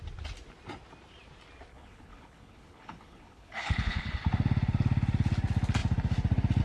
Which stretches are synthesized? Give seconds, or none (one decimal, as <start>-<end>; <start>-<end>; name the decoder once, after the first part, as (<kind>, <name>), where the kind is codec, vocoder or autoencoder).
1.7-4.1 (codec, HILCodec)